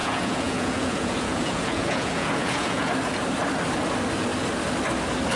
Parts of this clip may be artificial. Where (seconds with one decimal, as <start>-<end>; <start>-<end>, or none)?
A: 0.0-2.9